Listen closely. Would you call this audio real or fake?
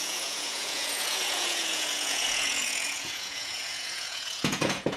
fake